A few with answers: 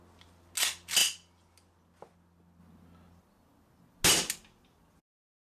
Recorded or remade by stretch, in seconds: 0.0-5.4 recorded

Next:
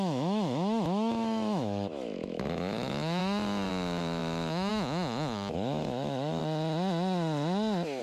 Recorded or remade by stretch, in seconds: 0.0-3.2 remade; 3.2-3.7 recorded; 3.7-6.4 remade; 6.4-8.0 recorded

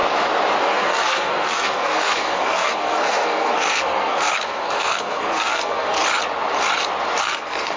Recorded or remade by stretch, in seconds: 0.0-0.6 recorded; 0.6-6.0 remade; 6.0-7.2 recorded; 7.2-7.8 remade

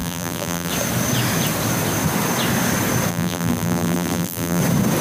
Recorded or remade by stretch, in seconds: 0.0-0.7 remade; 0.7-3.1 recorded; 3.1-4.6 remade; 4.6-5.0 recorded

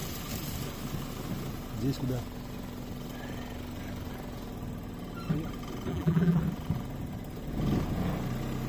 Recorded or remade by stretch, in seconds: 0.0-5.9 recorded; 5.9-6.4 remade; 6.4-8.7 recorded

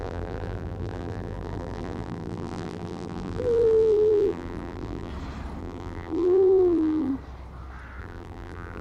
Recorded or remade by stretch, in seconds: 0.0-5.1 remade; 5.1-5.6 recorded; 5.6-7.1 remade; 7.1-8.0 recorded; 8.0-8.8 remade

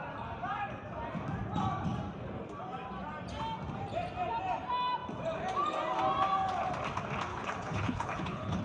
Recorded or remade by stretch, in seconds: 0.0-7.3 recorded; 7.3-8.6 remade